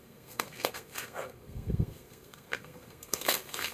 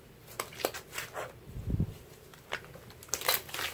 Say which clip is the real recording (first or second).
second